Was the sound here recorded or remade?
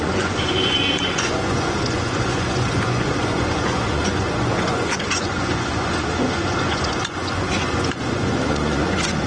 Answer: remade